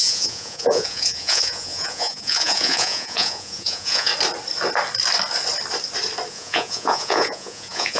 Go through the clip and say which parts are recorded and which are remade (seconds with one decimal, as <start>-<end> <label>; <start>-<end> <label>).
0.0-4.1 remade; 4.1-6.3 recorded; 6.3-8.0 remade